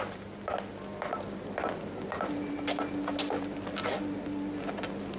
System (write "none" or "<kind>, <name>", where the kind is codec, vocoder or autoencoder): none